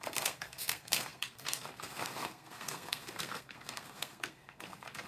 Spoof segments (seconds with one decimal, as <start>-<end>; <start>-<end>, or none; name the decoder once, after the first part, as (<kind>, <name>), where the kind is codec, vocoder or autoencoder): 0.0-5.1 (codec, SNAC)